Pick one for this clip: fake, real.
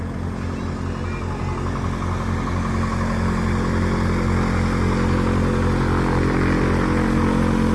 real